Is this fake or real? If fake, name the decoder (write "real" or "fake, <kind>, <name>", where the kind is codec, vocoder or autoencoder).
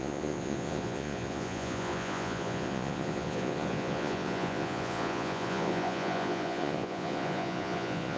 fake, vocoder, Vocos